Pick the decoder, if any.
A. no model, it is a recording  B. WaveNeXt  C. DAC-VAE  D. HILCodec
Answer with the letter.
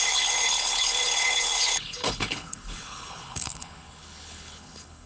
D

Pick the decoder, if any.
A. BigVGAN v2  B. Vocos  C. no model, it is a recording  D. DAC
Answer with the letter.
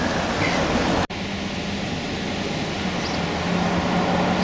C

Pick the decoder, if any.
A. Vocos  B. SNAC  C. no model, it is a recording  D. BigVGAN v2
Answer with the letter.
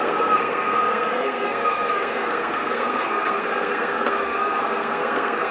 B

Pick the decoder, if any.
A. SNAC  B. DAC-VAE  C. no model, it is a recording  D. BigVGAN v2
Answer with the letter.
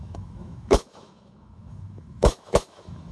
B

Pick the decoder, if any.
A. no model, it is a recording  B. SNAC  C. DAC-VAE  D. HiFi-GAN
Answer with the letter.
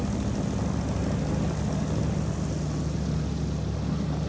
A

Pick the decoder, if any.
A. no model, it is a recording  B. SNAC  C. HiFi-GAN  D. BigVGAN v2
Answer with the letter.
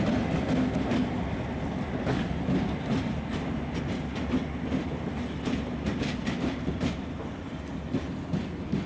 A